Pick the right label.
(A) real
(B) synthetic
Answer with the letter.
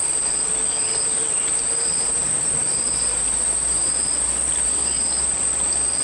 A